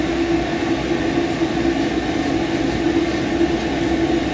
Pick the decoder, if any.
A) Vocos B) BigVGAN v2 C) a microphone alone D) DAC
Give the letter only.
C